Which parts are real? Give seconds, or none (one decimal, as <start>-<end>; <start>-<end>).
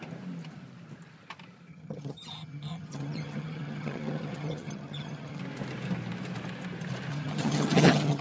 0.0-1.7; 5.4-7.1